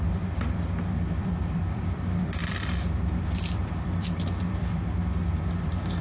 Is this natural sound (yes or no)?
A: no